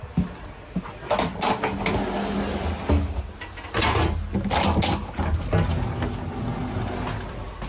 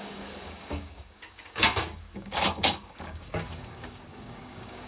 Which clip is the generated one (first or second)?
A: second